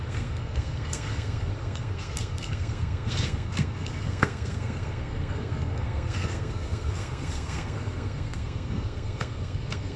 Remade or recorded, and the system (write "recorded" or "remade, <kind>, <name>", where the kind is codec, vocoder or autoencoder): remade, codec, SNAC